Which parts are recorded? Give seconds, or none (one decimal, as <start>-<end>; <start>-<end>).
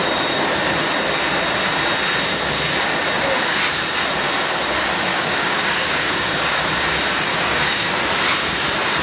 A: 0.0-5.1; 6.6-7.3; 7.9-9.0